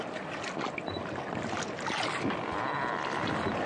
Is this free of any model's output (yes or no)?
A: yes